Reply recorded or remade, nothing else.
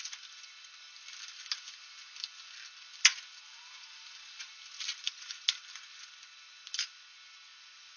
recorded